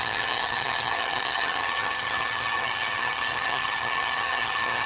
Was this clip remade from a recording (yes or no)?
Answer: yes